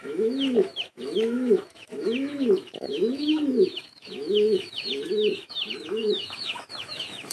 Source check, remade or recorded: remade